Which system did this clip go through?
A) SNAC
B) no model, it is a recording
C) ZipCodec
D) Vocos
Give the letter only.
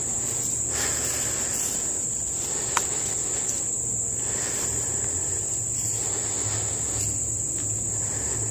B